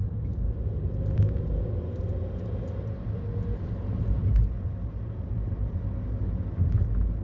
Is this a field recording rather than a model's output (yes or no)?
yes